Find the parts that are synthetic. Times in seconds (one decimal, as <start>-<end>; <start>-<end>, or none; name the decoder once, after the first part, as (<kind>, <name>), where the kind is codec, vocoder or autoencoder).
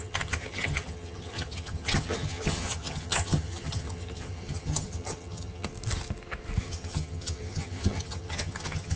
0.0-5.7 (vocoder, HiFi-GAN); 6.6-9.0